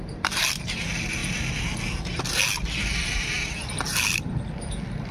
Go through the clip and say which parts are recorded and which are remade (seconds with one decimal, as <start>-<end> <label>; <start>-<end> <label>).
0.0-5.1 remade